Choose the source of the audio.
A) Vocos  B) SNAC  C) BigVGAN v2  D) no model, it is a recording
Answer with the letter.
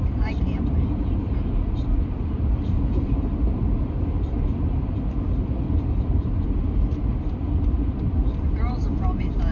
C